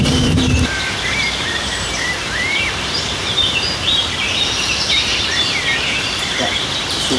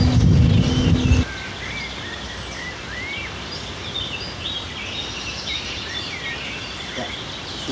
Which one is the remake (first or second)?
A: first